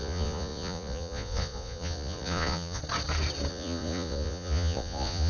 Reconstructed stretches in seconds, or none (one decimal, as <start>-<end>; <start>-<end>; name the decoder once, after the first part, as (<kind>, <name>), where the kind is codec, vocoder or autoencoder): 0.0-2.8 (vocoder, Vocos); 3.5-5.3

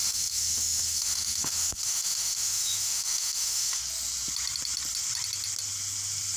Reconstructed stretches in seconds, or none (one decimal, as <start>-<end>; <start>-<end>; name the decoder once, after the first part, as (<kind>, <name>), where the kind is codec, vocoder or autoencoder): 0.0-3.8 (autoencoder, DAC-VAE)

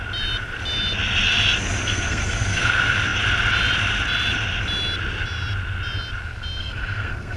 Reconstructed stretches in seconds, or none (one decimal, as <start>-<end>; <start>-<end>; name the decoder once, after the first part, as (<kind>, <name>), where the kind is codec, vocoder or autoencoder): 1.8-2.7 (codec, SNAC); 6.6-7.4

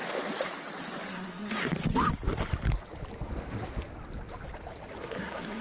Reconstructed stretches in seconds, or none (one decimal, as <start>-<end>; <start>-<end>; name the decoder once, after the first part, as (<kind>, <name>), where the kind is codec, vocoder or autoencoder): 1.1-1.6 (codec, SNAC); 5.0-5.6